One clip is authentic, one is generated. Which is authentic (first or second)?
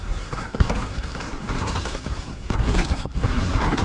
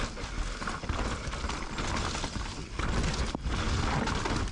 second